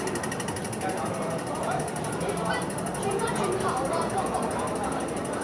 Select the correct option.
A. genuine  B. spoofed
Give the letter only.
A